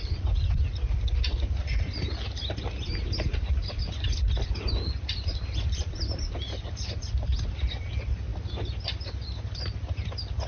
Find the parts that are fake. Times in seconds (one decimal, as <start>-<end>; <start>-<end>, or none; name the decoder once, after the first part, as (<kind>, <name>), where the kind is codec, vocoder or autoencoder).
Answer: none